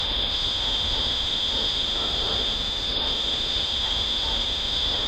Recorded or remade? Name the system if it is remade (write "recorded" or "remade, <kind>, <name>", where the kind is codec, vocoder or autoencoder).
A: remade, autoencoder, DAC-VAE